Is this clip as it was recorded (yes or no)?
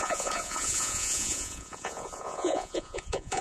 no